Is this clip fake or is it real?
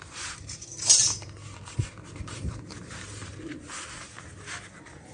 fake